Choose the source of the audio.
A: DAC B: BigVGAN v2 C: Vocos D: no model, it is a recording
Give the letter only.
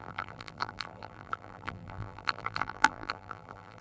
B